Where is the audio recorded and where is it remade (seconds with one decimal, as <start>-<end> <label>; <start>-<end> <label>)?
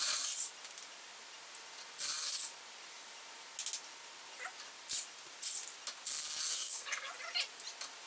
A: 0.0-6.5 recorded; 6.5-7.1 remade; 7.1-8.1 recorded